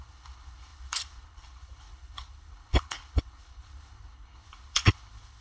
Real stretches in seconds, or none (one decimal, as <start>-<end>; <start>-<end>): none